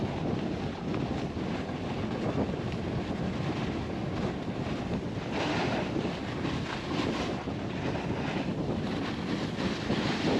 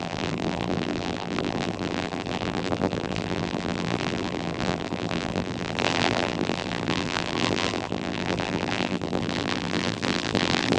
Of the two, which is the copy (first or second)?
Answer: second